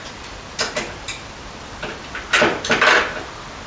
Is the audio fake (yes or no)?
no